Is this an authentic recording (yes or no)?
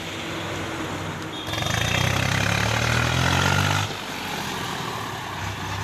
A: yes